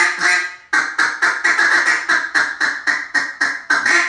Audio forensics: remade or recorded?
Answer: remade